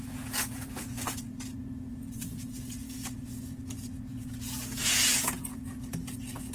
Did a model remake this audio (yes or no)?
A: yes